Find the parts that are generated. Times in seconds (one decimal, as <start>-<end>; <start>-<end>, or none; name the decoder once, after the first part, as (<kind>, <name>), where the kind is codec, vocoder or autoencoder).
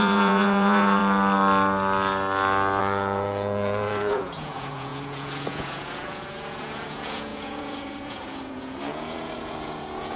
0.0-1.0 (vocoder, Vocos); 2.8-10.2